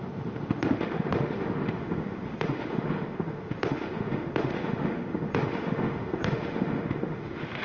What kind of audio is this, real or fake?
fake